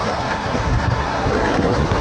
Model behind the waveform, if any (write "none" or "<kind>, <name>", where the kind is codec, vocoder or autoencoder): codec, SNAC